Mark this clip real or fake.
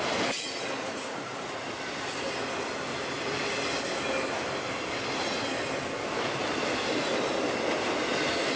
real